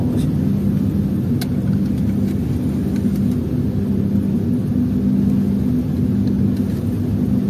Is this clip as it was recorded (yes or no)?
yes